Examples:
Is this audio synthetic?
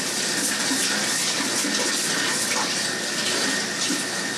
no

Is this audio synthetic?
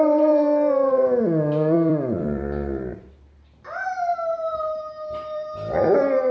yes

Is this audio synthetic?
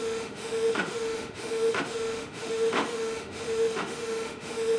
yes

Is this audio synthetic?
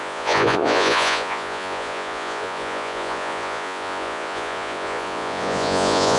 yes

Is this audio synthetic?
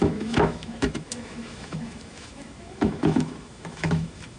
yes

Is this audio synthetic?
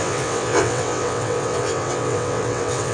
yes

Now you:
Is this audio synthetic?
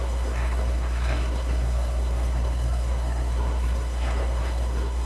yes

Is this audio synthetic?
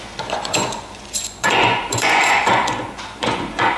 yes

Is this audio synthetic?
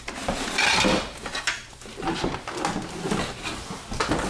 no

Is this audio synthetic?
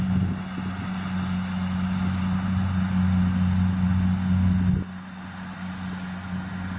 no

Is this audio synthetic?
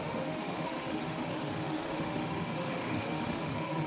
yes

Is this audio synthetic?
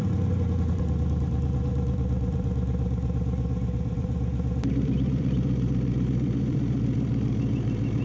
yes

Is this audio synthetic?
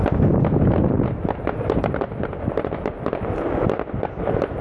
no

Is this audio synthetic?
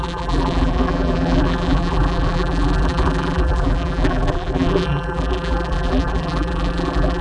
yes